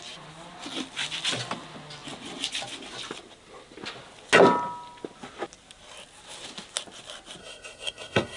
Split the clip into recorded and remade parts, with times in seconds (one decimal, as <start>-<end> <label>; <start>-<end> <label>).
0.0-7.4 recorded; 7.4-8.4 remade